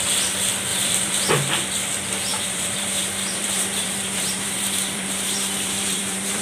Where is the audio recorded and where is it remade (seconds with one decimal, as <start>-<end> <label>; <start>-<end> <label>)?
0.0-0.7 recorded; 0.7-1.3 remade; 1.3-2.3 recorded; 2.3-6.4 remade